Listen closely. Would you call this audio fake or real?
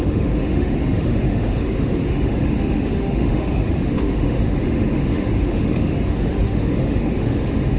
fake